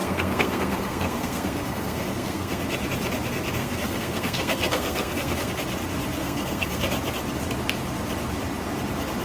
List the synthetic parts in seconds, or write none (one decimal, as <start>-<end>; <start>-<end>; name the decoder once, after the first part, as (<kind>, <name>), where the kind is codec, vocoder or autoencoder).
0.0-2.6 (codec, SNAC); 3.6-5.5; 6.2-6.8